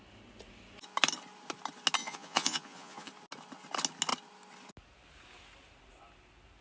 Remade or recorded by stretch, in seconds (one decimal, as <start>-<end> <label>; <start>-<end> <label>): 0.0-2.0 recorded; 2.0-3.1 remade; 3.1-6.6 recorded